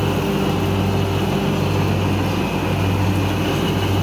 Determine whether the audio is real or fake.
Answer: real